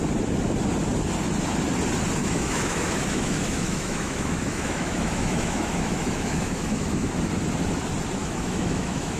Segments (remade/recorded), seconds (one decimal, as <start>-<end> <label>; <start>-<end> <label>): 0.0-2.2 recorded; 2.2-7.1 remade; 7.1-8.2 recorded; 8.2-9.2 remade